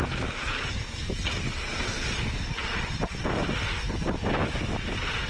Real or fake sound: real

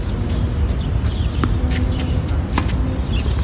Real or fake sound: real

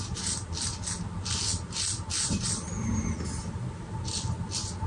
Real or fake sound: real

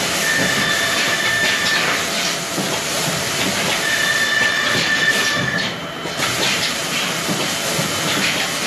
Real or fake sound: fake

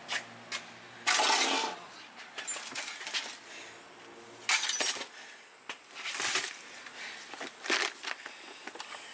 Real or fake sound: real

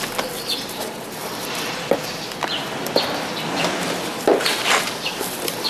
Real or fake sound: real